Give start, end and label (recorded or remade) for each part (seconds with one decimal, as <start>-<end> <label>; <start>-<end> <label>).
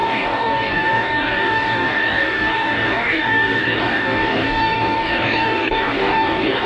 0.0-6.7 remade